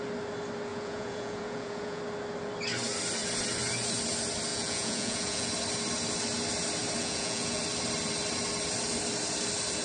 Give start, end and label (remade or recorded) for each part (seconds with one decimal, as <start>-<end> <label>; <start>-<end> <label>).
0.0-0.7 recorded; 0.7-2.0 remade; 2.0-4.5 recorded; 4.5-5.5 remade; 5.5-7.0 recorded; 7.0-7.6 remade; 7.6-9.8 recorded